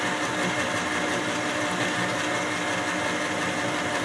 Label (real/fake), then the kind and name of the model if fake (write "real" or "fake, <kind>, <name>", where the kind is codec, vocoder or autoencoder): real